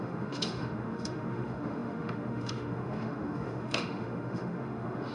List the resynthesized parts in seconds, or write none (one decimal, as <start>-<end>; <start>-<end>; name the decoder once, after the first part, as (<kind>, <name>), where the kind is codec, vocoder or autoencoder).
0.0-5.1 (autoencoder, DAC-VAE)